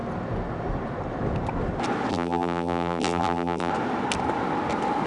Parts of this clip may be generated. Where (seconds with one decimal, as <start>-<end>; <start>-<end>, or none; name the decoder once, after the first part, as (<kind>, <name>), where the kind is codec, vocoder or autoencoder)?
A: 2.1-3.7 (vocoder, BigVGAN v2)

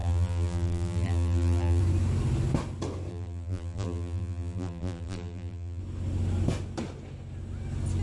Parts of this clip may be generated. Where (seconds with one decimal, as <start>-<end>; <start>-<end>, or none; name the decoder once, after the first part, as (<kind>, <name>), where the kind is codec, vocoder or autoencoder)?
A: 0.0-1.8 (vocoder, BigVGAN v2); 3.1-5.8

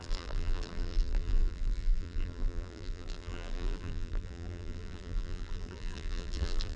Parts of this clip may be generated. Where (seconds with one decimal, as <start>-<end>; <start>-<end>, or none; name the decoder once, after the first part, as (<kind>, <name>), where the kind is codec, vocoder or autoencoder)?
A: 0.0-6.8 (vocoder, BigVGAN v2)

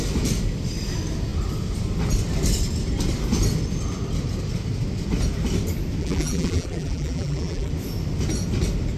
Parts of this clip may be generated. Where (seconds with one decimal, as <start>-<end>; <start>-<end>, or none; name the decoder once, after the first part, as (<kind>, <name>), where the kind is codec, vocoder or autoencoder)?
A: 6.0-7.7 (vocoder, BigVGAN v2)

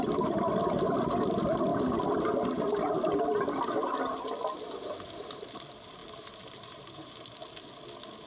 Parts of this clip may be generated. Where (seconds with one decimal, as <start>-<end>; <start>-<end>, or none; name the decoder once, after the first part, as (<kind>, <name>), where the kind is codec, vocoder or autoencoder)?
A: 1.7-2.3 (vocoder, BigVGAN v2); 6.0-7.3

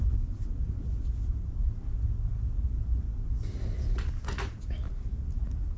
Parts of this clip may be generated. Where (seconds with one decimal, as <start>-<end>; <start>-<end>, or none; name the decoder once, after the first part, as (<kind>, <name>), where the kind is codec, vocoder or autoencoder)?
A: none